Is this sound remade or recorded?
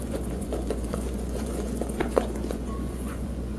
remade